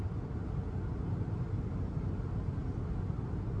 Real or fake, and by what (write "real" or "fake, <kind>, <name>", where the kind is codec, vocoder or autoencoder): real